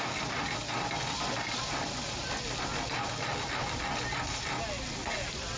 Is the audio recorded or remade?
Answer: recorded